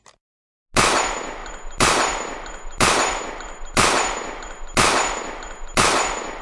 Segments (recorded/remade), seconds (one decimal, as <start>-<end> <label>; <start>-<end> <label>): 0.0-6.4 recorded